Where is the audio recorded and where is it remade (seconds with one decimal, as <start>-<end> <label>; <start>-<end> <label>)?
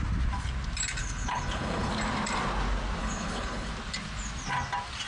0.0-1.0 recorded; 1.0-1.9 remade; 1.9-3.0 recorded; 3.0-3.7 remade; 3.7-5.1 recorded